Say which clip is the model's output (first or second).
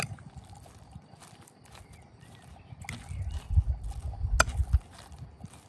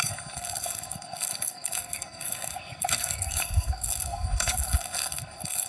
second